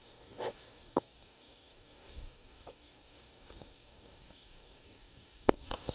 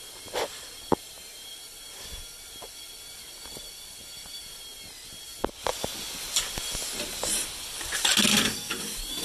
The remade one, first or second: first